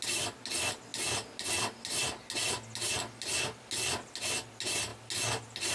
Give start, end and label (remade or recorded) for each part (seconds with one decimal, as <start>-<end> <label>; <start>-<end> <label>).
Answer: 0.0-5.7 recorded

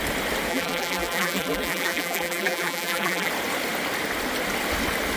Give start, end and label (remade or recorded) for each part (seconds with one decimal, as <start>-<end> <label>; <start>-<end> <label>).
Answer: 0.0-0.5 recorded; 0.5-3.3 remade; 3.3-5.2 recorded